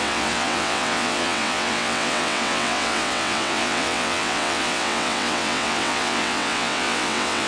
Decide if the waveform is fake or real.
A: fake